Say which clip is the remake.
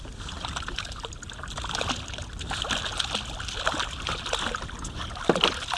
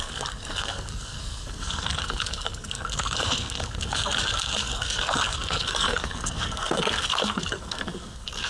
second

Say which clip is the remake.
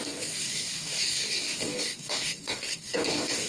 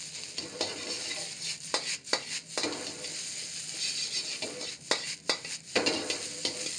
first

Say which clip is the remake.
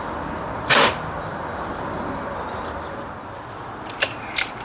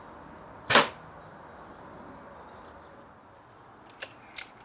first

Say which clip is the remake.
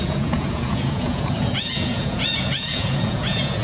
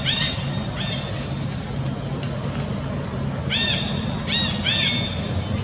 first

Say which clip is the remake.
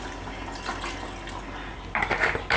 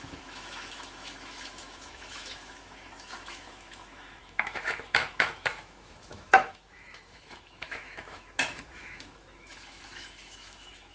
second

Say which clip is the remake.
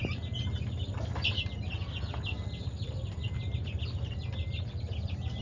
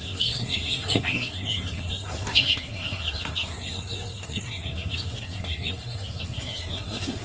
second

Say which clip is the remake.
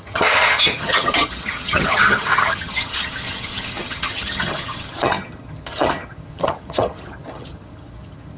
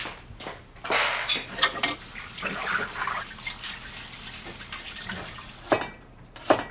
first